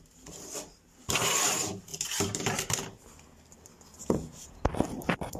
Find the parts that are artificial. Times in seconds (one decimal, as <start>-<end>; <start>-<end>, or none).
4.0-4.6